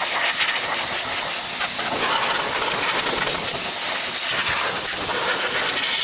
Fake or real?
real